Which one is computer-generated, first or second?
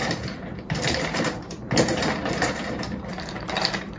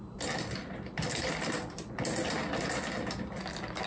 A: first